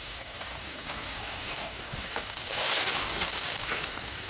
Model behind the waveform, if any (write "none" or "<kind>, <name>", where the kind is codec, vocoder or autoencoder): codec, DAC